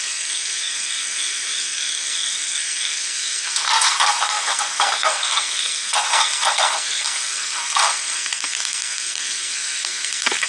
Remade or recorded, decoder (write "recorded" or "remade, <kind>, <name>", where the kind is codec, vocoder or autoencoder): remade, codec, SNAC